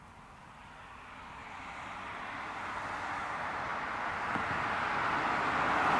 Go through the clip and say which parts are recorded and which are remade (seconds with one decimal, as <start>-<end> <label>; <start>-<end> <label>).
0.0-6.0 recorded